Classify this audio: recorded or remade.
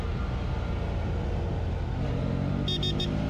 recorded